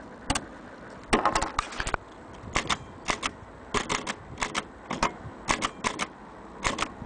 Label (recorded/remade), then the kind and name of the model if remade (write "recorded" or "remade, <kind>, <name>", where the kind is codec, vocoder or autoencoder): recorded